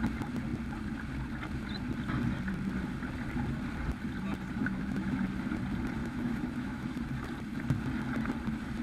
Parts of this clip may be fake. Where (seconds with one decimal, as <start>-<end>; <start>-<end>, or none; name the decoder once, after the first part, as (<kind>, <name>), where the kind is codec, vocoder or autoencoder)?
4.6-5.2 (autoencoder, DAC-VAE); 6.0-7.0